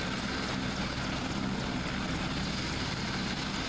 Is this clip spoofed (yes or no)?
no